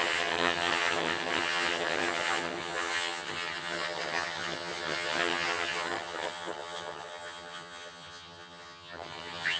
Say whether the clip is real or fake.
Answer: fake